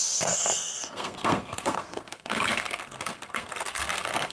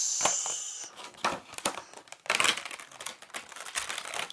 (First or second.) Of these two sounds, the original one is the second